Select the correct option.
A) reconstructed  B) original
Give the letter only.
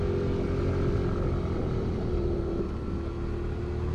B